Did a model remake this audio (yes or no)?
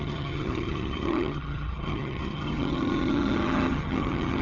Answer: yes